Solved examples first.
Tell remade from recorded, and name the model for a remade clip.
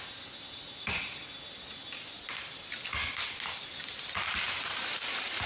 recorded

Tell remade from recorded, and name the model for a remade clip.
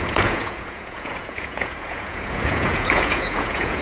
remade, vocoder, Vocos